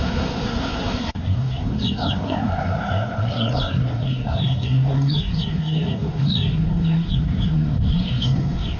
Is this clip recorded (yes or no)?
no